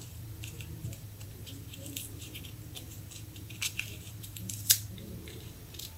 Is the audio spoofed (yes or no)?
yes